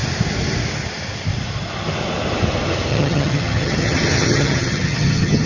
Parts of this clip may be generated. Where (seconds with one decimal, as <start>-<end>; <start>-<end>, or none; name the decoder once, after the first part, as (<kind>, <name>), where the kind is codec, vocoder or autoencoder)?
2.9-5.5 (vocoder, HiFi-GAN)